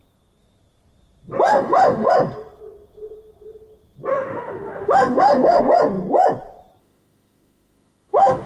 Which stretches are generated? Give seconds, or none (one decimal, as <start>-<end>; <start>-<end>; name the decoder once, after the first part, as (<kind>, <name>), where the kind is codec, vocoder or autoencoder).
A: 1.5-2.1 (autoencoder, DAC-VAE); 4.1-5.6; 6.8-8.5